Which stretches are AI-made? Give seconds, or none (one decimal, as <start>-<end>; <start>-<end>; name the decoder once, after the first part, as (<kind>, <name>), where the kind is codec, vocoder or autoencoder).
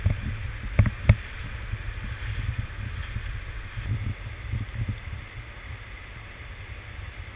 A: none